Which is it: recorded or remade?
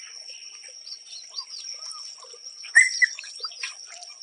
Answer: recorded